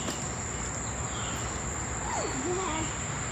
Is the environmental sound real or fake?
real